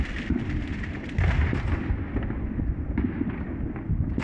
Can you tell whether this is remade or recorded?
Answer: recorded